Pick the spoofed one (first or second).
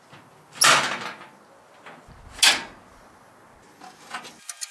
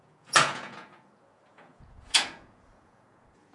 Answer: second